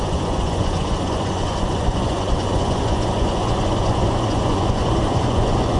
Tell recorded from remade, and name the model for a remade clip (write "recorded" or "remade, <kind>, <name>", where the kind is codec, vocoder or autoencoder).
remade, vocoder, Vocos